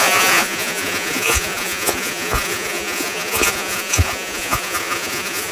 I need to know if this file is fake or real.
fake